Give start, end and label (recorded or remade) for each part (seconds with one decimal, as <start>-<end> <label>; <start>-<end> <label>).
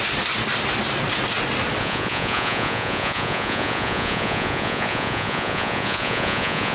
0.0-1.8 recorded; 1.8-6.7 remade